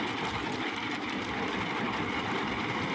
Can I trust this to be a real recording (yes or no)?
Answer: yes